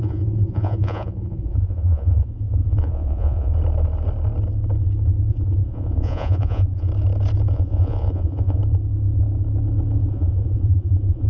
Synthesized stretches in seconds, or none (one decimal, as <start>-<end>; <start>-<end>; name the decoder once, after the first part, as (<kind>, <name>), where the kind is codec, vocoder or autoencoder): 0.0-3.5 (vocoder, Vocos); 5.3-6.9; 7.5-8.6; 10.1-11.3

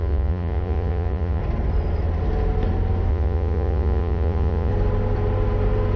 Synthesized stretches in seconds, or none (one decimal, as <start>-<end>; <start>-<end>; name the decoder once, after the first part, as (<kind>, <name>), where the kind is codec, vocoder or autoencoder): 0.0-1.4 (vocoder, Vocos); 3.1-4.7

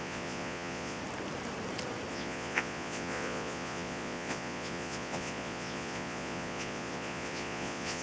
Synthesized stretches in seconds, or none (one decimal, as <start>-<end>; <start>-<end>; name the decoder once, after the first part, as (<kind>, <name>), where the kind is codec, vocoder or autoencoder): 0.0-1.0 (vocoder, Vocos); 2.1-8.0